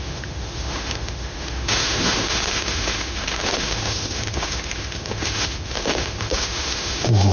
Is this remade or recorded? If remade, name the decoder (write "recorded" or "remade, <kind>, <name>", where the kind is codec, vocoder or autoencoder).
remade, autoencoder, DAC-VAE